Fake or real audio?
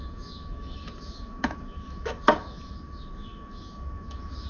fake